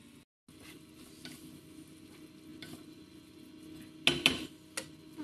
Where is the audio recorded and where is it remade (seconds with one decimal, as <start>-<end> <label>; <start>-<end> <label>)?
0.0-5.2 recorded